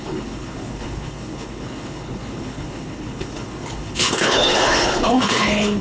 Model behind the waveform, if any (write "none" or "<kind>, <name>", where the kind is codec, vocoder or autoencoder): codec, HILCodec